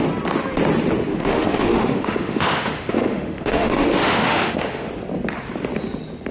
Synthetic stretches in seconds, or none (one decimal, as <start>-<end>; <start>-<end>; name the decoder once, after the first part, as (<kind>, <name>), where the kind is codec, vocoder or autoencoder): 1.1-4.9 (autoencoder, DAC-VAE)